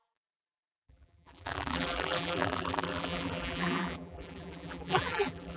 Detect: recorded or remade remade